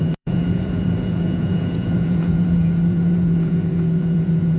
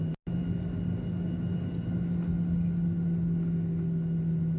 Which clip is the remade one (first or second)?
first